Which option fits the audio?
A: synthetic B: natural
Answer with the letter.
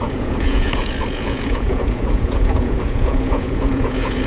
A